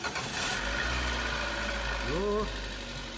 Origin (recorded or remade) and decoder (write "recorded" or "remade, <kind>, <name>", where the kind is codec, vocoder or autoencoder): recorded